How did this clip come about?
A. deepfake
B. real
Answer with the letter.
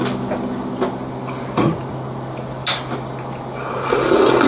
B